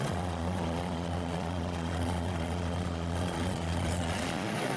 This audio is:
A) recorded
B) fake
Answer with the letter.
B